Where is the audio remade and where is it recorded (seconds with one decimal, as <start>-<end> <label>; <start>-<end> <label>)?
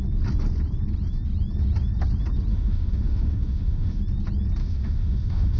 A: 0.0-2.5 recorded; 2.5-4.0 remade; 4.0-4.6 recorded; 4.6-5.6 remade